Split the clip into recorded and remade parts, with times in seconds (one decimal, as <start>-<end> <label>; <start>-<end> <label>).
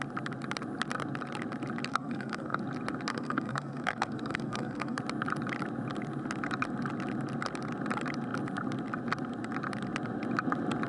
0.0-1.9 recorded; 1.9-2.6 remade; 2.6-3.1 recorded; 3.1-5.0 remade; 5.0-10.9 recorded